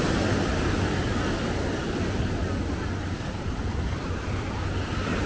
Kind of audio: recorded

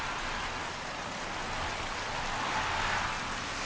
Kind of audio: recorded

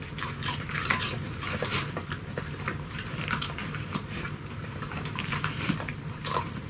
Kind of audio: remade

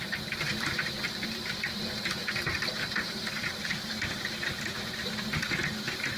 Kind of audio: remade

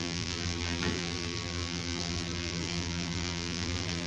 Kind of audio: remade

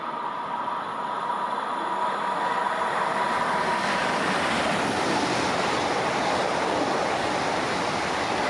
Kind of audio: remade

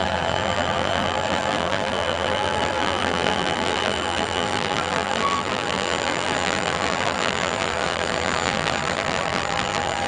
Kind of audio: remade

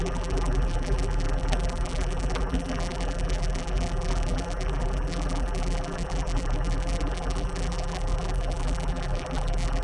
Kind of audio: remade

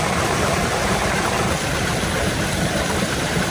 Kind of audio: remade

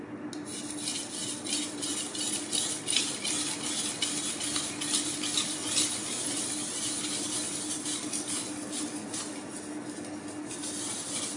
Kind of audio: recorded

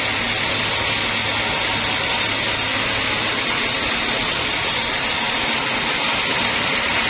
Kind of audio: recorded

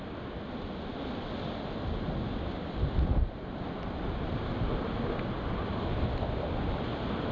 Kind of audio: recorded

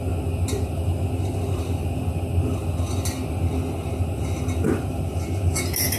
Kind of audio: recorded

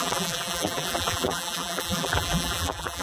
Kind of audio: remade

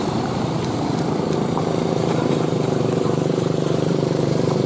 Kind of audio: remade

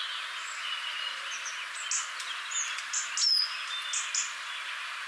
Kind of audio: recorded